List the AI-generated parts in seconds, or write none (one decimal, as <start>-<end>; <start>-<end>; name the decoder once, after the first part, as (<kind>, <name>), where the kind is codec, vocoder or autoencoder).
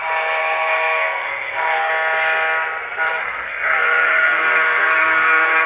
0.4-1.9 (codec, SNAC); 3.1-5.7